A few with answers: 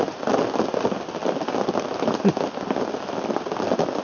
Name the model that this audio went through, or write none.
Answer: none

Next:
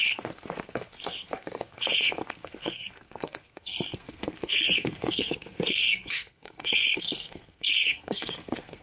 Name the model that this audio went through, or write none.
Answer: codec, SNAC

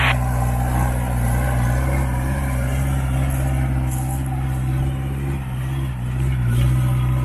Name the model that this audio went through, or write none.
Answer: none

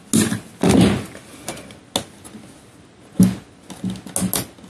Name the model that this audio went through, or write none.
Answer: none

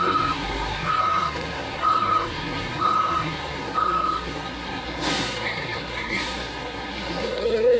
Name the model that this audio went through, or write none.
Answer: codec, SNAC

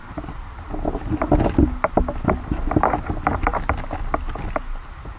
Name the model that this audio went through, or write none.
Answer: none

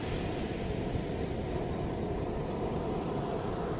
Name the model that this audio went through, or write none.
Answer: none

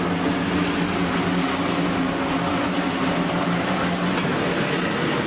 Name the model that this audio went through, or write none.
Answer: none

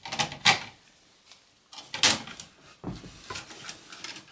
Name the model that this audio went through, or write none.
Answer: none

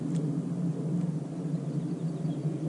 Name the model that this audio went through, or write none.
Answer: none